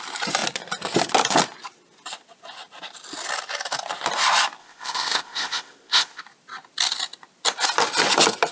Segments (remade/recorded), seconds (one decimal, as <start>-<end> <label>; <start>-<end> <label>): 0.0-4.6 recorded; 4.6-6.2 remade; 6.2-8.5 recorded